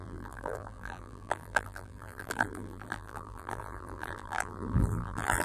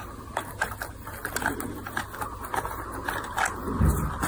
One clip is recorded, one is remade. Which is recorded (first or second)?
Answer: second